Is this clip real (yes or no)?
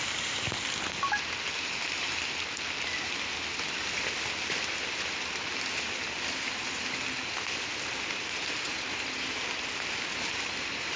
yes